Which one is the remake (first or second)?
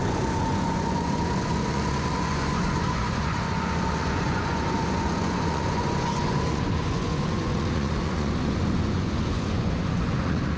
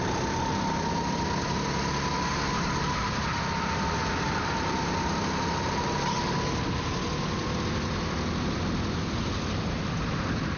first